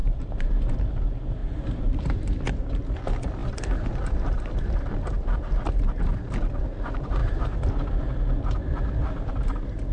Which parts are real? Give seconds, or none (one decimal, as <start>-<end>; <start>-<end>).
0.5-1.4; 2.3-9.9